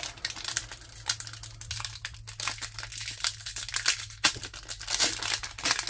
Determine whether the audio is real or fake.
real